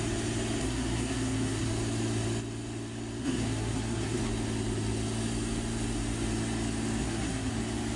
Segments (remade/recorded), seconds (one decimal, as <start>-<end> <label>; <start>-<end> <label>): 0.0-0.6 recorded; 0.6-1.7 remade; 1.7-3.2 recorded; 3.2-4.2 remade; 4.2-7.0 recorded; 7.0-7.5 remade; 7.5-8.0 recorded